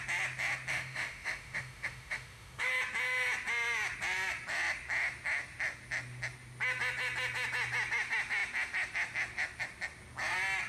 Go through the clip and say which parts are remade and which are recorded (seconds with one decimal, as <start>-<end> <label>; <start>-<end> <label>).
0.0-0.7 recorded; 0.7-2.7 remade; 2.7-10.7 recorded